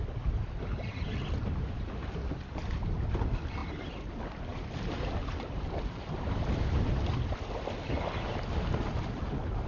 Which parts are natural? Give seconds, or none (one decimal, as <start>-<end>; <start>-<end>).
0.0-4.5; 7.1-9.7